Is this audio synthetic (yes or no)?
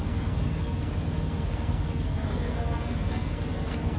yes